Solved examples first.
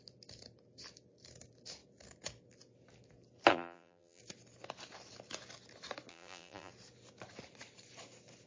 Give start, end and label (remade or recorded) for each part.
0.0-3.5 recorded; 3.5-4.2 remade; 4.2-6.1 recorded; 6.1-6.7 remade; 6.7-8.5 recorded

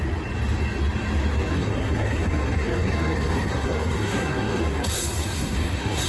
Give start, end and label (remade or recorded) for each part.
0.0-1.5 recorded; 1.5-6.1 remade

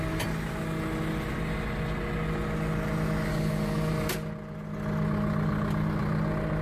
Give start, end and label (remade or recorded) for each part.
0.0-3.3 recorded; 3.3-3.9 remade; 3.9-6.6 recorded

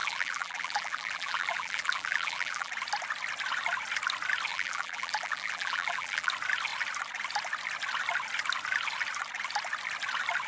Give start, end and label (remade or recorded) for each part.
0.0-2.7 remade; 2.7-4.5 recorded; 4.5-6.3 remade; 6.3-10.5 recorded

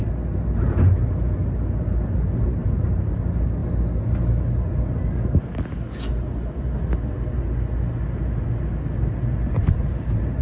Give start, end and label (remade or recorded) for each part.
0.0-2.6 recorded; 2.6-3.2 remade; 3.2-9.6 recorded; 9.6-10.4 remade

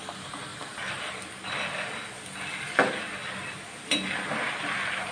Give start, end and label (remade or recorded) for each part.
0.0-5.1 recorded

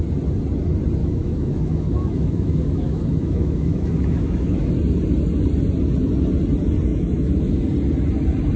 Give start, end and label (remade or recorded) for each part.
0.0-1.0 recorded; 1.0-4.7 remade; 4.7-6.9 recorded; 6.9-7.6 remade; 7.6-8.6 recorded

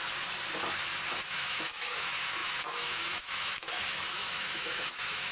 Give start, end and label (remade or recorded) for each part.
0.0-1.1 recorded; 1.1-5.3 remade